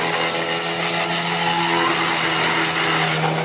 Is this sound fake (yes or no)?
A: no